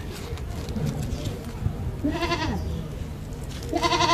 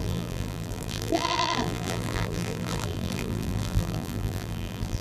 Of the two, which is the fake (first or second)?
second